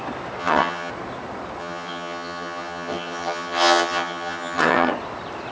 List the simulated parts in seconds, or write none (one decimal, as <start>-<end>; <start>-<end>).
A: 0.4-0.9; 1.6-4.9

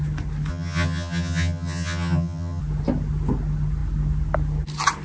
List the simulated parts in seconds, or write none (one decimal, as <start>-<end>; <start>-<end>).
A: 0.5-2.6

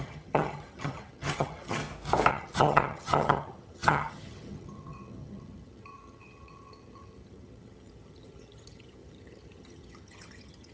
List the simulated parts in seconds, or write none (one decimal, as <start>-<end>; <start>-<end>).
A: 0.0-1.8; 2.3-10.7

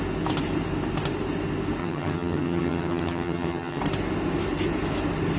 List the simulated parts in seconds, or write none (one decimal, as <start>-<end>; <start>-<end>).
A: 1.8-3.8

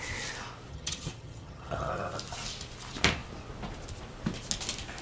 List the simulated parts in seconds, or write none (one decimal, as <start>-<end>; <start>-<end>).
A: 0.7-1.9

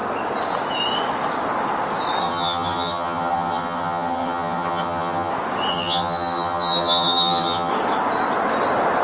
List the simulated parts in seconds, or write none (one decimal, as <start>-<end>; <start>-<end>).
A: 2.2-5.3; 5.7-7.7

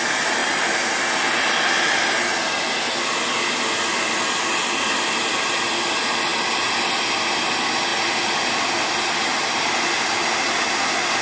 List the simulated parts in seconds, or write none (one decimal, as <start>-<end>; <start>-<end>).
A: none

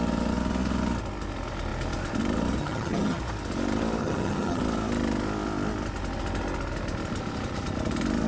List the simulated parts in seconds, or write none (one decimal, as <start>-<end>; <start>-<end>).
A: 2.6-3.2; 4.0-4.6